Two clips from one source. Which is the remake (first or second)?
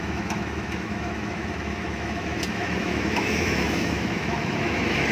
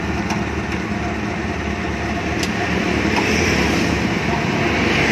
first